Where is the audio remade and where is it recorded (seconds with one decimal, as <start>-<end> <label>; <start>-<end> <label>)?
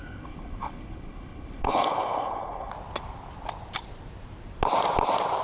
0.0-2.7 remade; 2.7-5.4 recorded